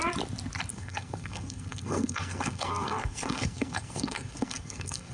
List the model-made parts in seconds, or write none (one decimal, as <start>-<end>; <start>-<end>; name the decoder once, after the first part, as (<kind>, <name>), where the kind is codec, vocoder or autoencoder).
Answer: 0.7-5.1 (codec, SNAC)